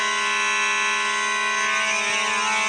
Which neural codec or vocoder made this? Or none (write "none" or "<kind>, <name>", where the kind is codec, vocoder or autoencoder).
none